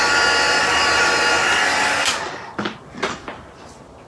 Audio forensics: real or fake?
real